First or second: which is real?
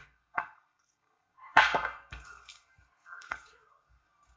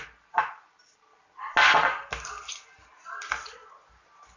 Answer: second